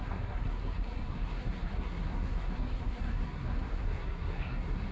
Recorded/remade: remade